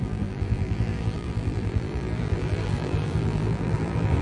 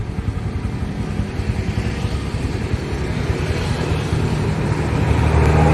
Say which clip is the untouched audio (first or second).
second